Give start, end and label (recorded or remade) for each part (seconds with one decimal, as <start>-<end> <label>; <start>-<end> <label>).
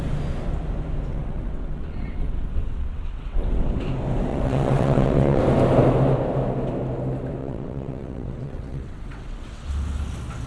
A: 0.0-1.1 recorded; 1.1-3.6 remade; 3.6-4.3 recorded; 4.3-5.4 remade; 5.4-7.4 recorded; 7.4-9.7 remade; 9.7-10.5 recorded